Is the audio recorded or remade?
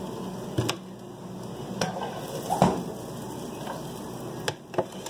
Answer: recorded